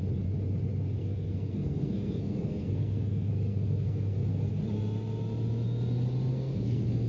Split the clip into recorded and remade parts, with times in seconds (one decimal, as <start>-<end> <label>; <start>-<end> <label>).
0.0-1.0 recorded; 1.0-4.5 remade; 4.5-6.3 recorded; 6.3-7.1 remade